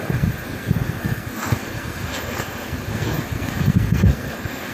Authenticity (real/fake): fake